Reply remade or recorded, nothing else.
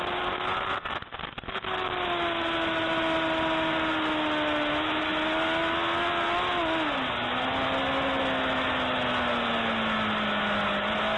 recorded